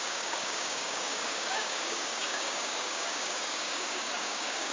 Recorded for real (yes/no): no